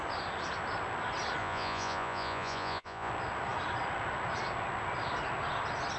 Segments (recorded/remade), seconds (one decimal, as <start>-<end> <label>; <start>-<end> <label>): 0.0-1.4 recorded; 1.4-3.1 remade; 3.1-6.0 recorded